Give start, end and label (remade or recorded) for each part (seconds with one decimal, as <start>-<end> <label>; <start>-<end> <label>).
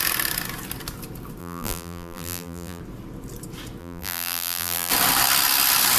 0.0-1.4 recorded; 1.4-2.8 remade; 2.8-3.8 recorded; 3.8-4.9 remade; 4.9-6.0 recorded